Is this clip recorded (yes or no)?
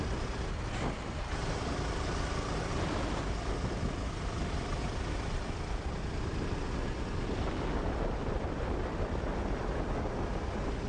yes